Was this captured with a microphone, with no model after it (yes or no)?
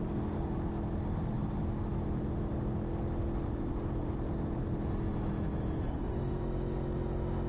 yes